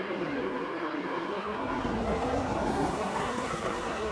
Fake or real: fake